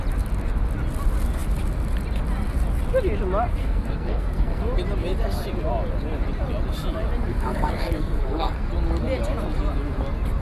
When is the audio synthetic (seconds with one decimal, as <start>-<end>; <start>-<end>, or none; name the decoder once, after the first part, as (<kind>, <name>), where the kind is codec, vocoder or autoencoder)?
3.6-4.6 (codec, SNAC); 7.3-8.7